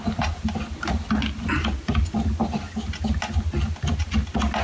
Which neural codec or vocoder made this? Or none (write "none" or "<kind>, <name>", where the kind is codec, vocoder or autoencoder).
none